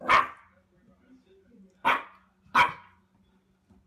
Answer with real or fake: real